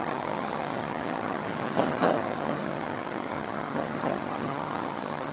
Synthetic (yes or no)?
yes